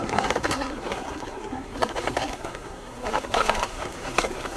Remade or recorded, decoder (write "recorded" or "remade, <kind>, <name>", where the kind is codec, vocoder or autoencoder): remade, codec, SNAC